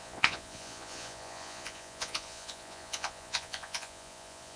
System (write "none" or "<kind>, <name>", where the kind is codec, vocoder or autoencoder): vocoder, Vocos